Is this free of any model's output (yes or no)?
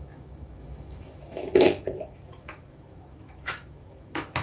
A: no